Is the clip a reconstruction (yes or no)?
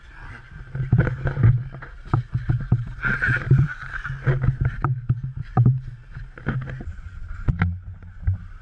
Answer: no